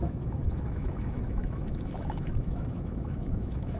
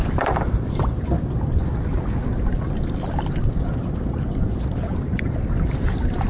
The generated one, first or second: first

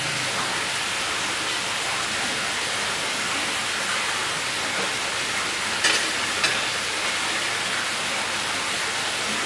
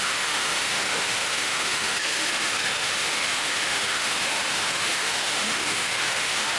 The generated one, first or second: second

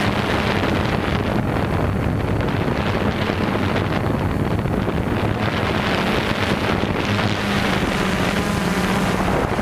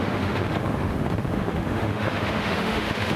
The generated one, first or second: second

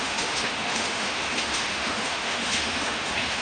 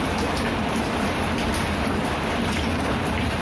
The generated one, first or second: first